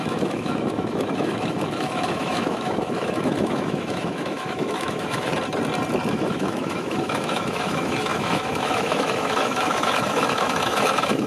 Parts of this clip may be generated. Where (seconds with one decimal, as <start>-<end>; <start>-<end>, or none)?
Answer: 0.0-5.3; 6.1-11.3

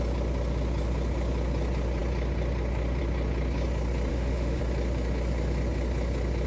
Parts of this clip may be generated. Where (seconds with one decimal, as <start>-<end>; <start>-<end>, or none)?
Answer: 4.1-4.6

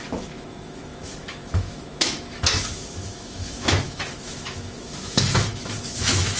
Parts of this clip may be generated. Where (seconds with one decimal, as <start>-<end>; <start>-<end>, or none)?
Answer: 0.0-6.4